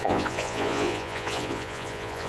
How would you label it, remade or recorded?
remade